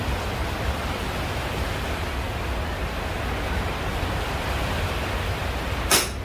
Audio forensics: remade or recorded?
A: recorded